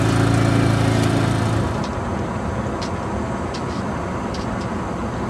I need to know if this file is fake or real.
real